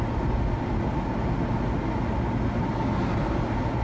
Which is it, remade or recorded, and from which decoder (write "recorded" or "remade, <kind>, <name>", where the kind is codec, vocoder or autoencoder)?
recorded